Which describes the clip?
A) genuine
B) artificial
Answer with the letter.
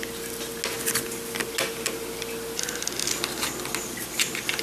A